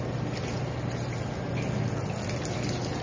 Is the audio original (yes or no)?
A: yes